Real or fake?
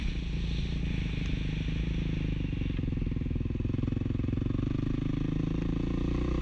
real